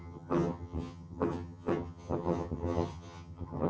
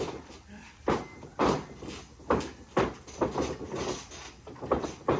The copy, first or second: first